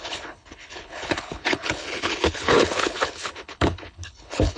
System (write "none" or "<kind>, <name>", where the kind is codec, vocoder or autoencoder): codec, HILCodec